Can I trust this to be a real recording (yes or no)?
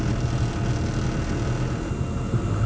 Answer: yes